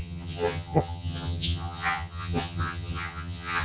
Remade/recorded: remade